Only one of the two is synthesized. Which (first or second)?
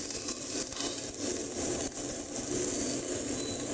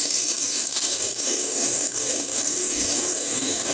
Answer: second